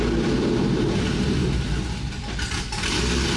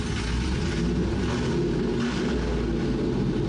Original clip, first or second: second